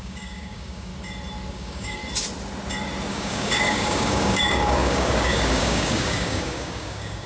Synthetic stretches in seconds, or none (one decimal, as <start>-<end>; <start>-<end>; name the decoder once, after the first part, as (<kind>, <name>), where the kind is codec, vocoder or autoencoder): 0.0-0.9 (codec, DAC); 1.5-2.0; 3.1-7.3